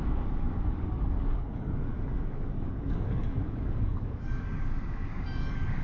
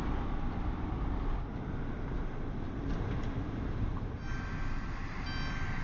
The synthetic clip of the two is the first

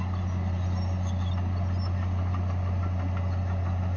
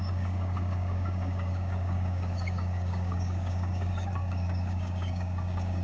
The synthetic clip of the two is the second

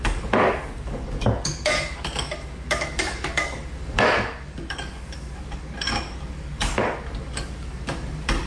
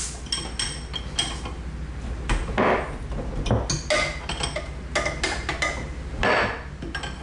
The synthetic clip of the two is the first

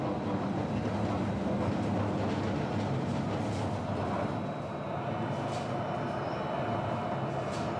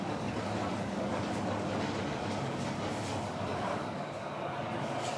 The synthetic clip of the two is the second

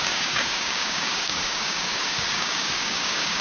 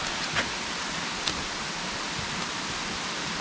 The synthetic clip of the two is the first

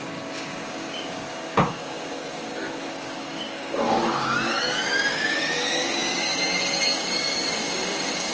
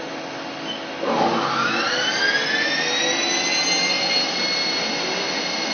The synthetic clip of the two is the first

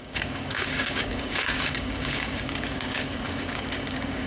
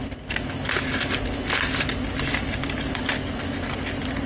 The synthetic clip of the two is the first